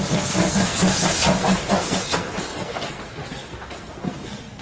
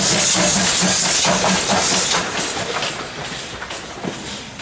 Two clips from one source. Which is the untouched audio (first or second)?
second